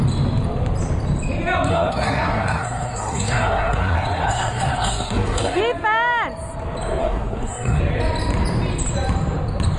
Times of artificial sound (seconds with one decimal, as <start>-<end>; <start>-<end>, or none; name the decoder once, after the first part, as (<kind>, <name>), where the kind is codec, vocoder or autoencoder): 1.7-5.6 (codec, SNAC); 7.0-7.8